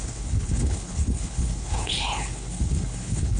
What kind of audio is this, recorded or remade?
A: remade